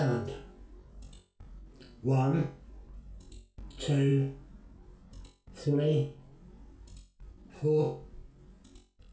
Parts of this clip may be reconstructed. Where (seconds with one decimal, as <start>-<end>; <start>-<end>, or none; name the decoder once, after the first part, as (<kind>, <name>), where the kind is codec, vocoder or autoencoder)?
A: none